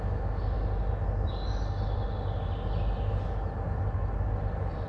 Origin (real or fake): real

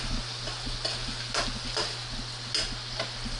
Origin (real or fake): real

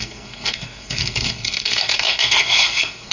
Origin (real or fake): fake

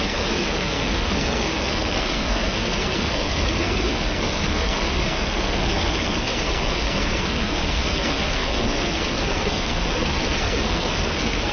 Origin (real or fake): fake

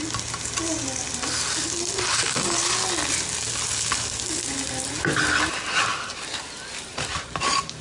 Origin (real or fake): real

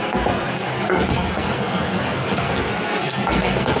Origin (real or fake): fake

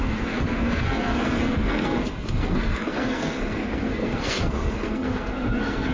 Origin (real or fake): fake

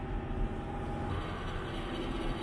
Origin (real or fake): real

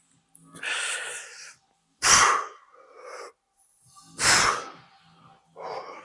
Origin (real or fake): real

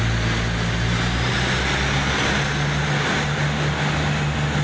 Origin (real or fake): real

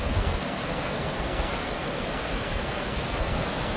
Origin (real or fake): fake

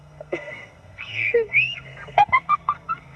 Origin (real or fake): fake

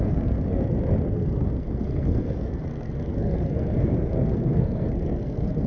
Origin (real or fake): fake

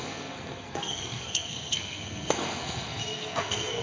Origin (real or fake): fake